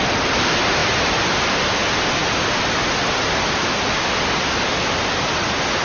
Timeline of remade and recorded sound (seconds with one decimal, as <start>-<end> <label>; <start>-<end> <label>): 0.0-5.8 recorded